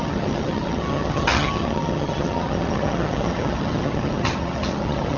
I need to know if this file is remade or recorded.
remade